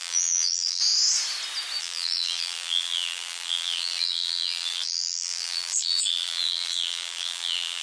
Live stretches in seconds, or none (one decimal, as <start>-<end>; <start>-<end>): 0.8-1.8